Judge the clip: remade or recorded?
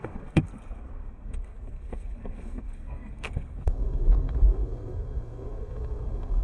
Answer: remade